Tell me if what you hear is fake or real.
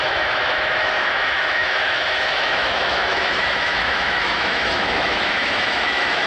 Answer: fake